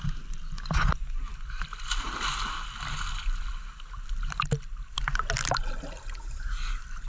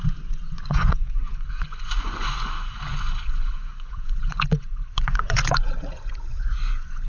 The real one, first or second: first